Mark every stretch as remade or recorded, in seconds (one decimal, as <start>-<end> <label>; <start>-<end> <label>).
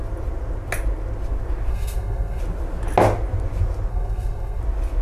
0.0-1.7 recorded; 1.7-2.4 remade; 2.4-3.9 recorded; 3.9-4.6 remade; 4.6-5.0 recorded